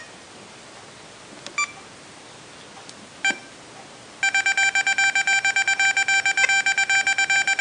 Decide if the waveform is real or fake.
real